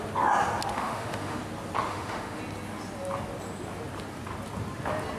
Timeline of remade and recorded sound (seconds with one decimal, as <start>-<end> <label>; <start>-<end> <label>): 0.0-0.7 recorded; 0.7-1.4 remade; 1.4-1.9 recorded; 1.9-2.4 remade; 2.4-5.2 recorded